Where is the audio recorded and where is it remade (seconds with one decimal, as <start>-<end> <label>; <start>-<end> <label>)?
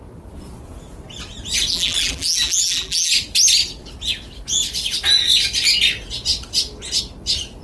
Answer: 0.0-1.7 recorded; 1.7-3.1 remade; 3.1-7.6 recorded